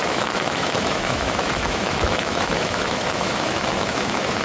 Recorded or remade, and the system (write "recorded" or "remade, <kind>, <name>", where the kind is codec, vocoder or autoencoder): remade, autoencoder, DAC-VAE